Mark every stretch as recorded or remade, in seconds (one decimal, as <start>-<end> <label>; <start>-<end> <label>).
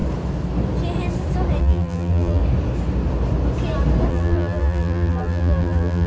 0.0-1.6 recorded; 1.6-2.4 remade; 2.4-4.1 recorded; 4.1-6.1 remade